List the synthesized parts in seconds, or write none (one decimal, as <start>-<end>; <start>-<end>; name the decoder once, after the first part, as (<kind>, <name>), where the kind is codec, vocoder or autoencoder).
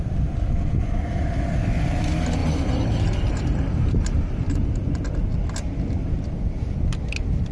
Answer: 2.4-4.7 (vocoder, BigVGAN v2)